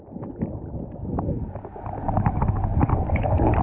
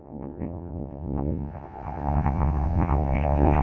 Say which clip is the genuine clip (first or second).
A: first